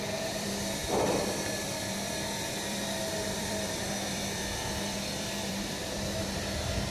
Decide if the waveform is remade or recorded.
remade